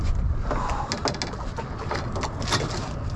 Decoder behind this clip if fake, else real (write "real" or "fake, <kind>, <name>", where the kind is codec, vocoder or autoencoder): real